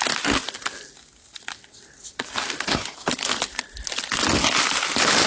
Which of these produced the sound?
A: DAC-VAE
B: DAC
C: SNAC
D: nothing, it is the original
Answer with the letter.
D